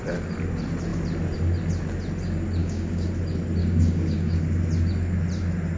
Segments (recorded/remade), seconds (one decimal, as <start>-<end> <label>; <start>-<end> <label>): 0.0-2.6 recorded; 2.6-3.1 remade; 3.1-3.6 recorded; 3.6-4.4 remade; 4.4-5.8 recorded